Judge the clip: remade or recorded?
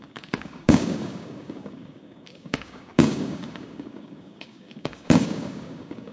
remade